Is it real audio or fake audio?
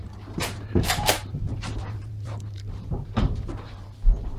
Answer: fake